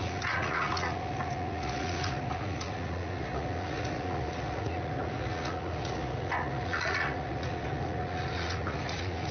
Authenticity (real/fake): fake